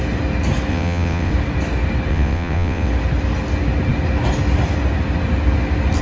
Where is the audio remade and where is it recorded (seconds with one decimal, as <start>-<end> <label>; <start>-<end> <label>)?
0.0-0.7 recorded; 0.7-1.3 remade; 1.3-2.1 recorded; 2.1-2.9 remade; 2.9-6.0 recorded